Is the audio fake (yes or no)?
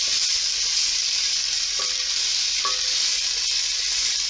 no